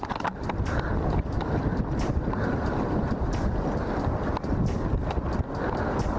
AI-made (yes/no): no